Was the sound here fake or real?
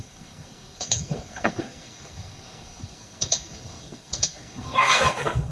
fake